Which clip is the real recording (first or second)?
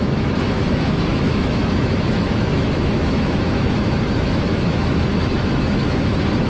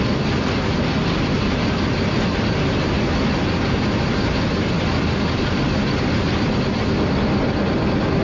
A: second